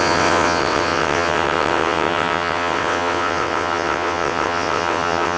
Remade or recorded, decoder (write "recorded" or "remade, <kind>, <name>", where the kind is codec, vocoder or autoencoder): remade, vocoder, WaveNeXt